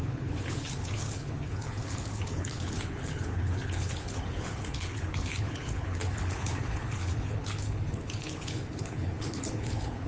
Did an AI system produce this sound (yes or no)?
yes